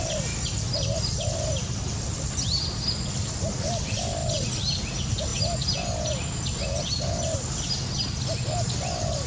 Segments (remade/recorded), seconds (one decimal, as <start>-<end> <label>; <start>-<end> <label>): 0.0-4.2 remade; 4.2-4.8 recorded; 4.8-9.3 remade